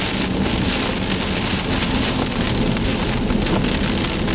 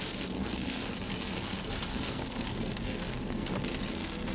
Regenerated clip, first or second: second